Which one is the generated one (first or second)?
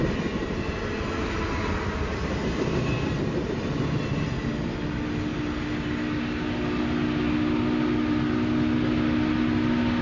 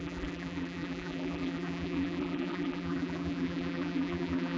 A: second